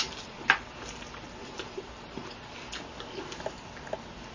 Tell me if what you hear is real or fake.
real